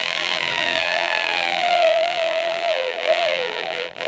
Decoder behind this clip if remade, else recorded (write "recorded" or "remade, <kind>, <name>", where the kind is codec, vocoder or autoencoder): remade, vocoder, BigVGAN v2